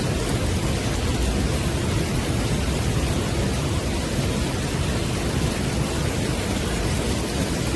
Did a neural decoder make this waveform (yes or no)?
no